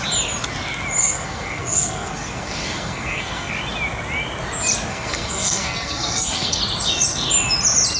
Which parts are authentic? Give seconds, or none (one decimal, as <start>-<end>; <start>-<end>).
0.0-1.0; 3.5-4.9; 6.6-8.0